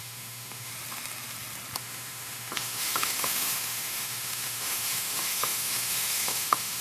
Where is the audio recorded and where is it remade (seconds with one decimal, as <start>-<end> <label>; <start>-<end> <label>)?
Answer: 0.0-0.7 remade; 0.7-1.8 recorded; 1.8-6.8 remade